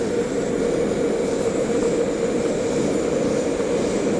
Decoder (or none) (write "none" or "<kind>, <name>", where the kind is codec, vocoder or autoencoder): none